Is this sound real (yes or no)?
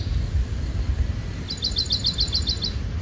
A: yes